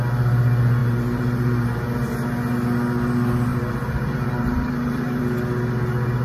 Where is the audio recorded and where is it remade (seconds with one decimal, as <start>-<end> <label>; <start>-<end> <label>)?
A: 0.0-0.8 recorded; 0.8-2.1 remade; 2.1-3.5 recorded; 3.5-5.2 remade; 5.2-6.2 recorded